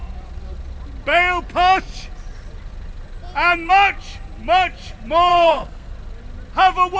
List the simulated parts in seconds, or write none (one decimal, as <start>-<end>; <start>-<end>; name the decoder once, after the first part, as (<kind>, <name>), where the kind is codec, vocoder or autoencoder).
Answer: 5.3-5.9 (codec, SNAC)